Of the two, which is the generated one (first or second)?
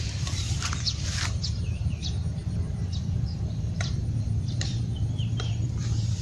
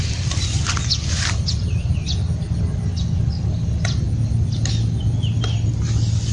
first